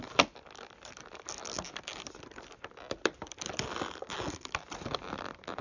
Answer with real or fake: fake